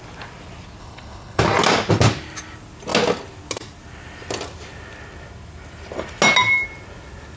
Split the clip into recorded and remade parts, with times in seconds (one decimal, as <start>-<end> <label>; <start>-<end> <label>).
0.0-0.8 recorded; 0.8-1.4 remade; 1.4-7.4 recorded